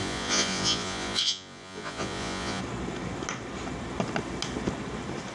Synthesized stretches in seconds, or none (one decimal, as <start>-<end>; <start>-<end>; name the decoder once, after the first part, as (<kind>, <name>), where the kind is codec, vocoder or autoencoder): 0.0-2.6 (vocoder, Vocos)